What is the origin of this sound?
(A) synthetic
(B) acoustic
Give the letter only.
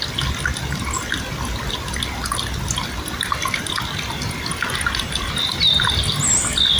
B